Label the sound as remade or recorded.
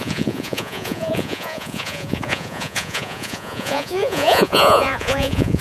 remade